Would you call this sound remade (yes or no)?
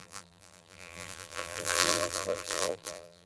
yes